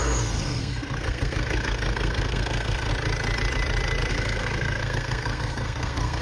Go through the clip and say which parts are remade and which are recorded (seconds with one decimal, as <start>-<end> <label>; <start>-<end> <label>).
0.0-2.9 remade; 2.9-4.1 recorded; 4.1-6.2 remade